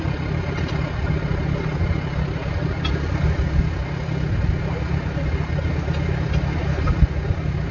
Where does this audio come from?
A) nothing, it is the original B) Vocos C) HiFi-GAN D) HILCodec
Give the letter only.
A